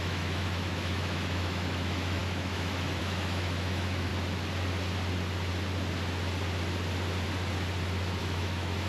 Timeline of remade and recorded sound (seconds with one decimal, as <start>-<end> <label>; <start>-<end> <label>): 0.0-4.1 remade; 4.1-8.2 recorded; 8.2-8.9 remade